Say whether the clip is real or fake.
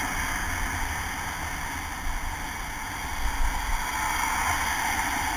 real